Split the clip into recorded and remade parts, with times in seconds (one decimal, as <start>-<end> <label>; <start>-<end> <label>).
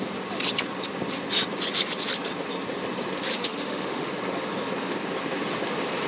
0.0-3.3 recorded; 3.3-4.1 remade; 4.1-6.1 recorded